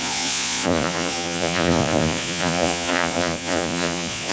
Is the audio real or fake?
fake